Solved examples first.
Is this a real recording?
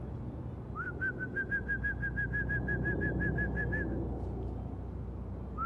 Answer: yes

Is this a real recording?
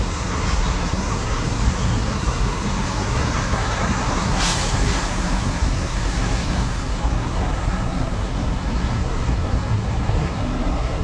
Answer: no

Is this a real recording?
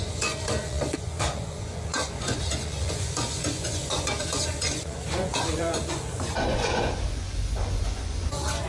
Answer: no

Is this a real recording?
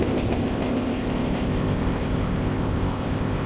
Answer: no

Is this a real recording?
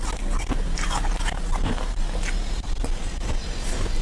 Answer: yes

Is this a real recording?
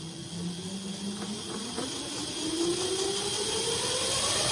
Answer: yes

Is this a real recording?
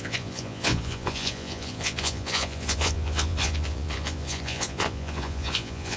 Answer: no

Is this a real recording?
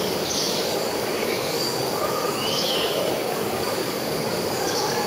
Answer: no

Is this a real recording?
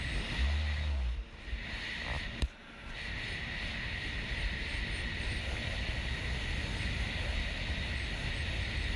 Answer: yes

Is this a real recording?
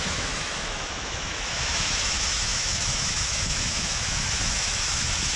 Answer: no